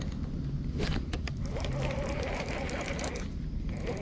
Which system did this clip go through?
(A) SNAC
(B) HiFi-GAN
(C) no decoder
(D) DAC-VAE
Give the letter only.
C